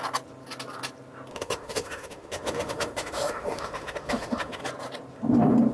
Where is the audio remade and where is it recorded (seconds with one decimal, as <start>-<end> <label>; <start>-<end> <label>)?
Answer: 0.0-1.3 recorded; 1.3-4.6 remade; 4.6-5.7 recorded